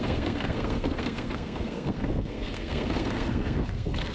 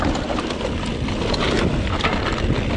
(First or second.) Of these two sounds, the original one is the second